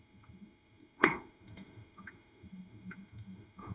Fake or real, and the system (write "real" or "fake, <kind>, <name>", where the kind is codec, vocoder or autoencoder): fake, autoencoder, DAC-VAE